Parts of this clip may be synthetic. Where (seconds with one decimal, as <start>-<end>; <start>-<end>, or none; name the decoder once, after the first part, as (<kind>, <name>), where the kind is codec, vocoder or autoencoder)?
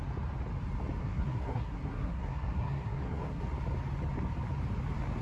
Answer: 1.0-3.4 (codec, SNAC)